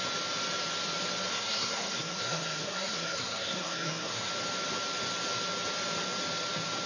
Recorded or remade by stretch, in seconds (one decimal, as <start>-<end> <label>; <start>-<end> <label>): 0.0-1.3 recorded; 1.3-4.3 remade; 4.3-6.9 recorded